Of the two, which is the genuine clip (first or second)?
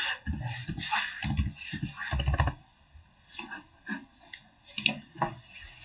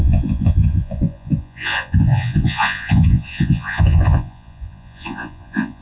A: first